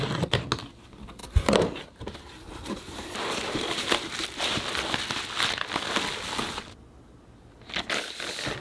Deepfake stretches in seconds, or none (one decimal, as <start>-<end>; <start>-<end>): 1.2-4.1